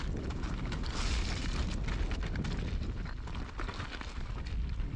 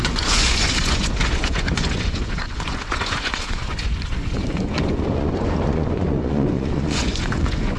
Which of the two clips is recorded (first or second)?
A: first